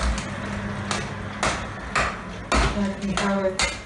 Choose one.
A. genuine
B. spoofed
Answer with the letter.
A